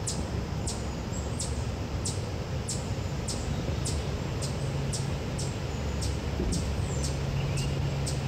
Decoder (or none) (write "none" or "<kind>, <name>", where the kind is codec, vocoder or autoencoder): none